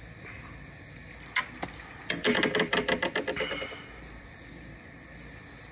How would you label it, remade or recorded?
recorded